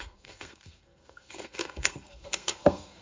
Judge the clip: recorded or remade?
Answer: remade